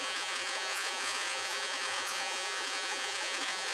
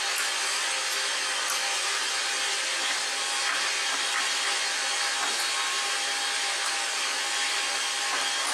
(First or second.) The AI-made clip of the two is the first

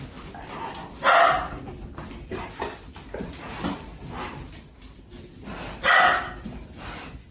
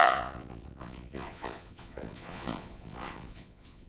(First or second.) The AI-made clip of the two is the second